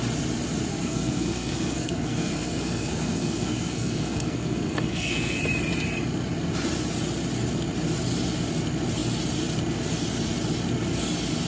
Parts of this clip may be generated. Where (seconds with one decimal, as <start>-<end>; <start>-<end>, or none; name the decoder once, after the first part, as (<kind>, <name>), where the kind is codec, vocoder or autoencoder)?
0.7-5.4 (codec, SNAC)